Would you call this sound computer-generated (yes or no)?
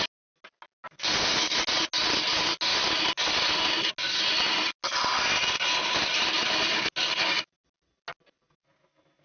no